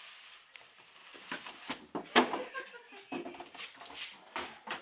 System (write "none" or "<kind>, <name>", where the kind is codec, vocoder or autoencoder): none